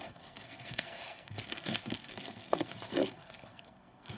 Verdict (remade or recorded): remade